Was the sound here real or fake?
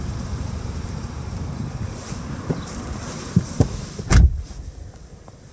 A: real